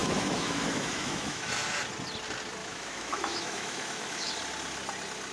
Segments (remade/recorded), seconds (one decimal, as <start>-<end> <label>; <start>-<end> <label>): 0.0-1.5 remade; 1.5-2.6 recorded; 2.6-4.3 remade; 4.3-5.3 recorded